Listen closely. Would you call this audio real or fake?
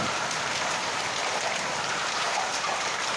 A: fake